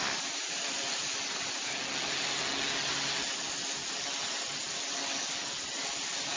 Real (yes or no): yes